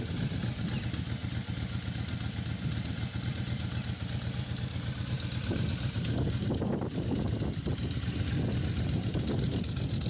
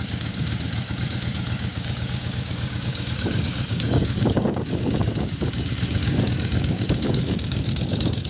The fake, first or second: second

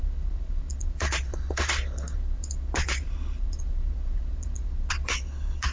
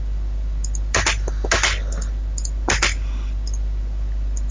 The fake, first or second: first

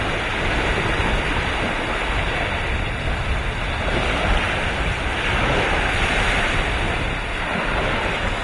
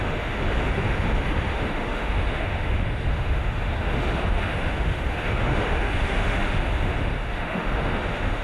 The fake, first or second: second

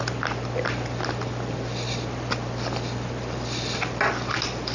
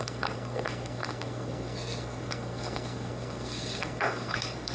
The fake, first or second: second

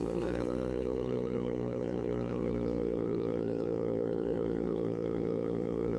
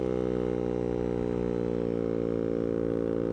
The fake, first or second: first